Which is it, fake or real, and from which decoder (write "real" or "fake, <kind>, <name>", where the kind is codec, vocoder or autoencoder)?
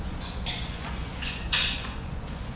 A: fake, vocoder, Vocos